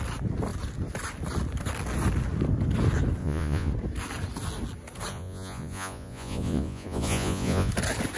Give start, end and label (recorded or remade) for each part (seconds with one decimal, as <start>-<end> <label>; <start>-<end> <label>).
0.0-3.2 recorded; 3.2-3.7 remade; 3.7-5.1 recorded; 5.1-7.7 remade; 7.7-8.2 recorded